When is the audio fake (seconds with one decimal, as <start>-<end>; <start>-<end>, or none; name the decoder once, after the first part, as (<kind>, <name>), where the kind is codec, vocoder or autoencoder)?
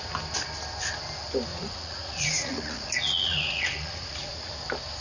1.5-4.5 (vocoder, Vocos)